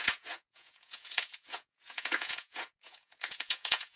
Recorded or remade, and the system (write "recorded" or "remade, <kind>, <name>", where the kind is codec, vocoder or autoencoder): remade, vocoder, Vocos